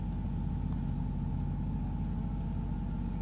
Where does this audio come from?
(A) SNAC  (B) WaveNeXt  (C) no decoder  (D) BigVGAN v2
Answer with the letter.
C